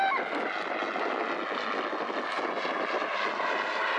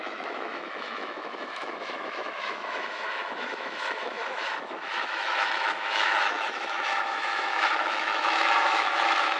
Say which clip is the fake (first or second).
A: second